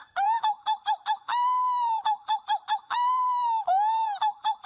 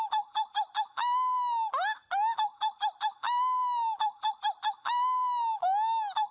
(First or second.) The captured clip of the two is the second